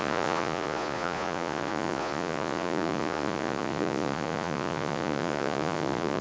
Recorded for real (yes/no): no